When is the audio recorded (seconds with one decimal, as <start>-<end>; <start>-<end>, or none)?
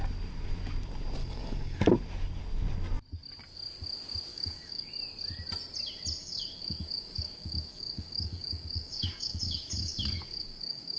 0.0-1.2; 1.8-4.3; 4.9-6.2